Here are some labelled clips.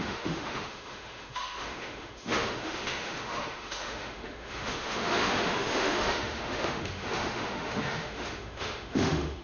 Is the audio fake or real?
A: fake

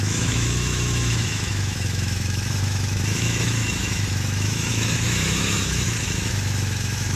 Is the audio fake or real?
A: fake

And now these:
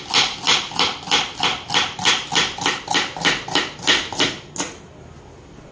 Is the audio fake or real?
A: real